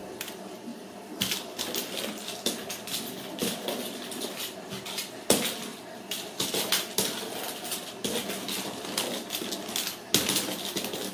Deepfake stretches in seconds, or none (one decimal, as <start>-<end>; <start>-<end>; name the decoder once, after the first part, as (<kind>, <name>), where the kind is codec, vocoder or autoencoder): 0.7-4.5 (vocoder, BigVGAN v2); 5.7-6.7